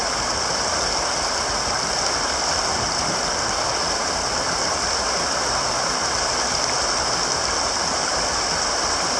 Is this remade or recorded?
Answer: recorded